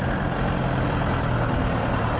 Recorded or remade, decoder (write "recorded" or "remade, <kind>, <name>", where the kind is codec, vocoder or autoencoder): recorded